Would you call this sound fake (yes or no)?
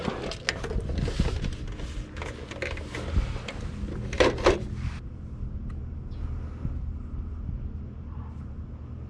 no